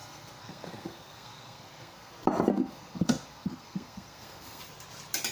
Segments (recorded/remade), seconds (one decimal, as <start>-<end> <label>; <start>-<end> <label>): 0.0-2.1 remade; 2.1-2.5 recorded; 2.5-4.6 remade; 4.6-5.3 recorded